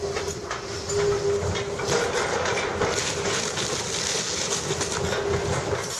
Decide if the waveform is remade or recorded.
recorded